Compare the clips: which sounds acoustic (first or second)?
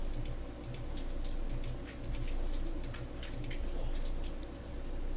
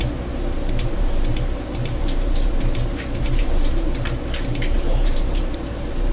first